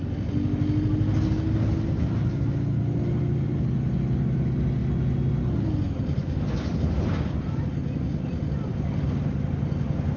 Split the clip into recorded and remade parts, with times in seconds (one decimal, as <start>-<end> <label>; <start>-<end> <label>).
0.0-10.2 recorded